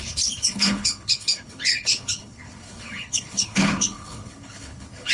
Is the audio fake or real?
fake